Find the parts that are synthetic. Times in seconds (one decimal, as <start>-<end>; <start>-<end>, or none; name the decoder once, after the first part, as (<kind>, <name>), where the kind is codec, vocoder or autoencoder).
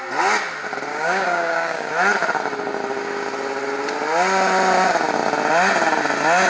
0.9-1.9 (codec, DAC)